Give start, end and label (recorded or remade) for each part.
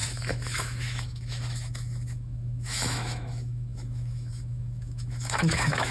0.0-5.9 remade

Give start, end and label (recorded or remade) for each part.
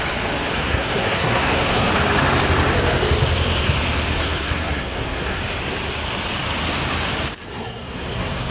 0.0-0.5 recorded; 0.5-1.9 remade; 1.9-4.1 recorded; 4.1-5.4 remade; 5.4-7.5 recorded; 7.5-8.5 remade